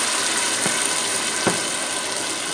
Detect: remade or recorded recorded